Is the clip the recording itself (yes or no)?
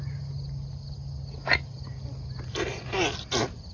yes